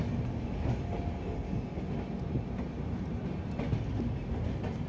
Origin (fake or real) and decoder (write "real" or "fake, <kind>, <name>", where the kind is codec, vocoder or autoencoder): real